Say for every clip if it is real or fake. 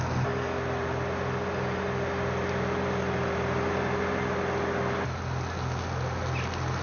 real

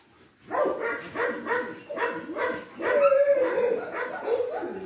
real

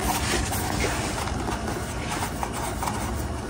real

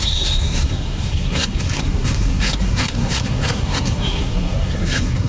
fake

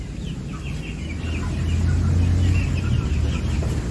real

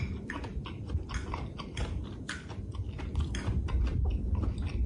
real